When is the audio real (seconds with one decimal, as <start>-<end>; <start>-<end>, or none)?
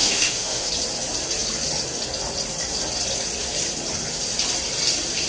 0.7-5.3